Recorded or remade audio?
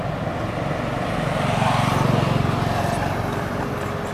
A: recorded